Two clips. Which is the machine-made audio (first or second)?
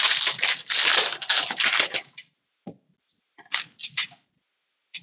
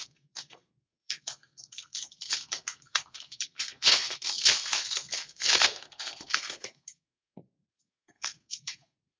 second